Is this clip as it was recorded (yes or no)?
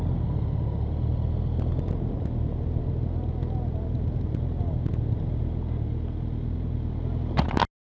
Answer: yes